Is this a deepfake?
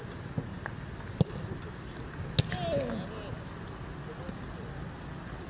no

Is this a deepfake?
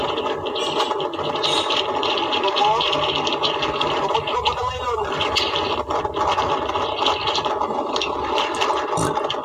no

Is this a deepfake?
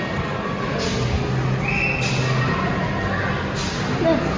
no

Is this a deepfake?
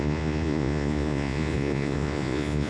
yes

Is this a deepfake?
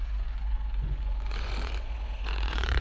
yes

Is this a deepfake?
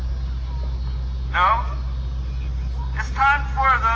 no